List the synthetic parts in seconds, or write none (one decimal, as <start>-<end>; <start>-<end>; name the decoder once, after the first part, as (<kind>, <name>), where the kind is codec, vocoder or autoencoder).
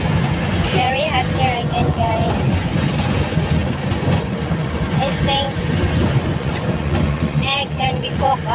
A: 0.0-8.5 (vocoder, Vocos)